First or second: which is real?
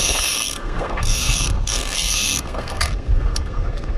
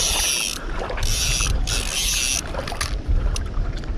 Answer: second